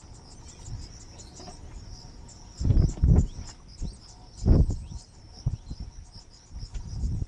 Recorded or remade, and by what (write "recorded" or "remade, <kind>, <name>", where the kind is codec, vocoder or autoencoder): recorded